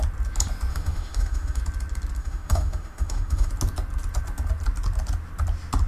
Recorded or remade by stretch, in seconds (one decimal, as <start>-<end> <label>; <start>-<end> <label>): 0.0-0.7 recorded; 0.7-1.6 remade; 1.6-2.2 recorded; 2.2-3.5 remade; 3.5-5.9 recorded